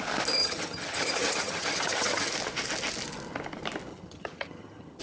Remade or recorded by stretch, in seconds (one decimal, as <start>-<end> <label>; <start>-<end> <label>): 0.0-0.4 recorded; 0.4-2.3 remade; 2.3-3.9 recorded; 3.9-5.0 remade